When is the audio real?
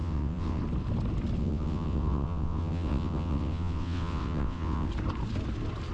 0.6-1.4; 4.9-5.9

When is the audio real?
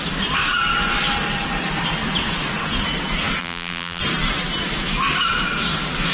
0.0-3.4; 4.0-6.1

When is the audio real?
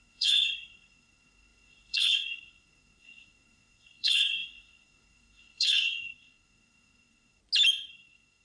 7.4-7.9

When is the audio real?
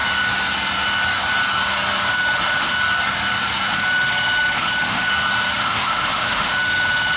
0.0-2.1; 2.7-3.7; 5.1-5.6